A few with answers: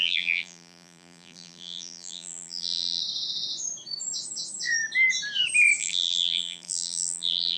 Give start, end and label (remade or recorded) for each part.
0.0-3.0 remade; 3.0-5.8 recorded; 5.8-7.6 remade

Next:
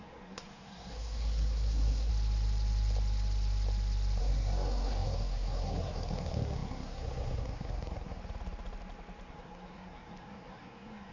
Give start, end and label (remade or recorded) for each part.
0.0-2.1 remade; 2.1-4.2 recorded; 4.2-8.2 remade; 8.2-9.3 recorded; 9.3-11.1 remade

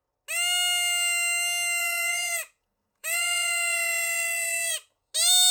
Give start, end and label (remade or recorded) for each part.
0.0-1.8 recorded; 1.8-5.1 remade; 5.1-5.5 recorded

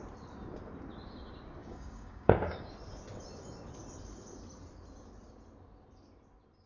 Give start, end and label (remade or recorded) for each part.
0.0-1.6 recorded; 1.6-2.7 remade; 2.7-6.7 recorded

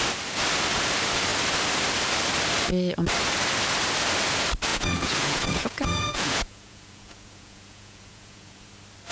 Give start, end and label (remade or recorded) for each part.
0.0-4.7 recorded; 4.7-8.7 remade; 8.7-9.1 recorded

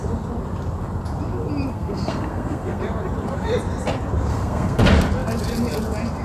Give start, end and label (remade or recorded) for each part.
0.0-1.7 recorded; 1.7-2.8 remade; 2.8-4.3 recorded; 4.3-4.8 remade; 4.8-6.2 recorded

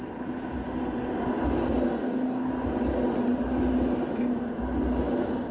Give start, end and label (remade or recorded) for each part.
0.0-2.0 recorded; 2.0-2.5 remade; 2.5-5.5 recorded

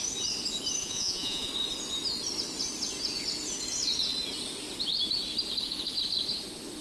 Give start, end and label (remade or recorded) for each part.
0.0-0.8 recorded; 0.8-1.5 remade; 1.5-6.8 recorded